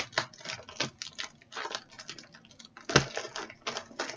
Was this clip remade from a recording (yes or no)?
no